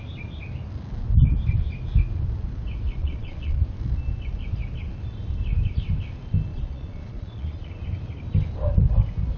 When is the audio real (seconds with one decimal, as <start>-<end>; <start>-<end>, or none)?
0.0-3.0; 3.6-6.5; 7.7-9.4